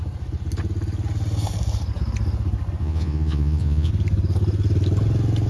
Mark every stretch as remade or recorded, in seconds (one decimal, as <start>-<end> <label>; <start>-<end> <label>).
0.0-2.8 recorded; 2.8-3.9 remade; 3.9-5.5 recorded